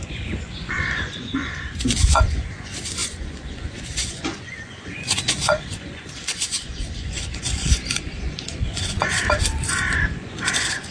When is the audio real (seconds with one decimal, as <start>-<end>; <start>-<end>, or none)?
none